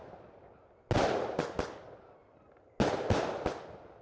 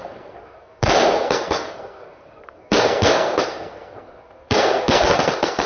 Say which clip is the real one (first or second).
first